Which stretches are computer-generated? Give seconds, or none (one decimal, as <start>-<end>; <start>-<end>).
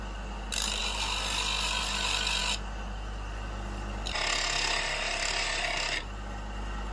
none